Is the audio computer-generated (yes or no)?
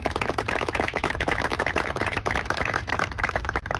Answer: yes